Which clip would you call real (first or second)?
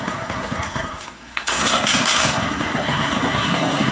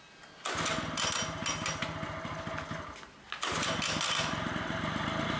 second